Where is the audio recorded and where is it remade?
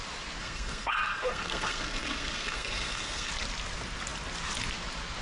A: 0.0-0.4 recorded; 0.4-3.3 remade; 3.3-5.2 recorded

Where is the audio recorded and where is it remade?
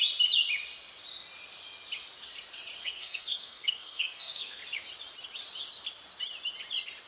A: 0.0-2.8 recorded; 2.8-4.6 remade; 4.6-7.1 recorded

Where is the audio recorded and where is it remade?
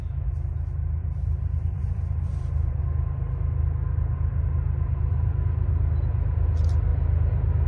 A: 0.0-1.0 recorded; 1.0-2.8 remade; 2.8-7.7 recorded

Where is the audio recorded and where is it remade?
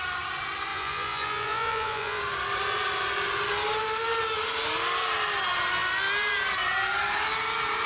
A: 0.0-0.7 recorded; 0.7-2.2 remade; 2.2-7.9 recorded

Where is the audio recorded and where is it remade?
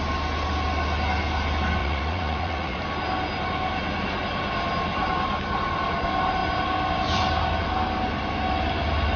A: 0.0-1.8 recorded; 1.8-2.8 remade; 2.8-9.2 recorded